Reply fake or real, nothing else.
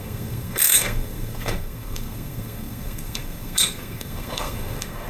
fake